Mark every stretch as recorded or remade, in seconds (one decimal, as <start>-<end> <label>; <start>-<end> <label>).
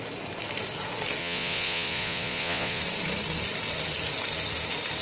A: 0.0-1.2 recorded; 1.2-2.8 remade; 2.8-5.0 recorded